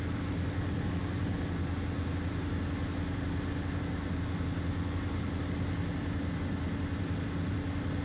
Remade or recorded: recorded